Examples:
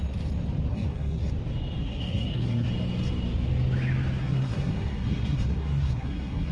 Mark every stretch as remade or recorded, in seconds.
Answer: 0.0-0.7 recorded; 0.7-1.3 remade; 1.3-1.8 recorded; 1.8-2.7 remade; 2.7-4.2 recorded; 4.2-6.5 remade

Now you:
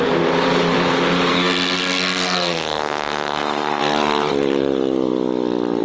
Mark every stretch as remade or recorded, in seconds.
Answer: 0.0-1.3 recorded; 1.3-3.8 remade; 3.8-5.8 recorded